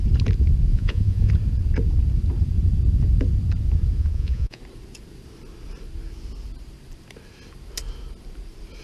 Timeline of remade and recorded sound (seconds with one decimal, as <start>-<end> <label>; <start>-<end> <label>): 0.0-0.7 recorded; 0.7-1.3 remade; 1.3-4.0 recorded; 4.0-4.6 remade; 4.6-8.8 recorded